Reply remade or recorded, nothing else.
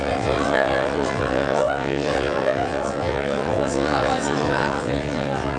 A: remade